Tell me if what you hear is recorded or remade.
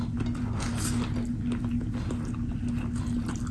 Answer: recorded